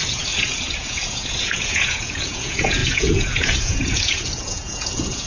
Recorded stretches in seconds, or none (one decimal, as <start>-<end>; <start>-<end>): none